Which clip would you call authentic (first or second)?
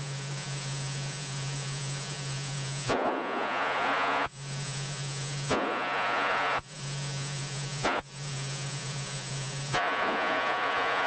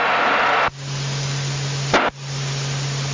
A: second